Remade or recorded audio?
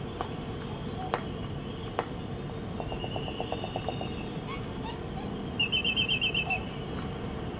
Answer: recorded